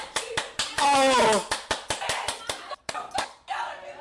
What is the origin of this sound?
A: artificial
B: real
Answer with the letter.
B